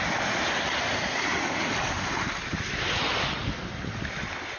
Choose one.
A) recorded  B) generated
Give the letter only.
A